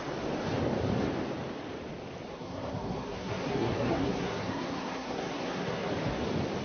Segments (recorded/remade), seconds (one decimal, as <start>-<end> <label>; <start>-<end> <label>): 0.0-2.3 recorded; 2.3-5.9 remade; 5.9-6.6 recorded